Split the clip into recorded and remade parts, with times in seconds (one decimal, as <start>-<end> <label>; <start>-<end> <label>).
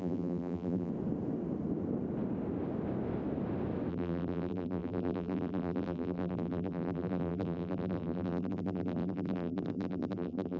0.0-0.9 remade; 0.9-3.9 recorded; 3.9-10.6 remade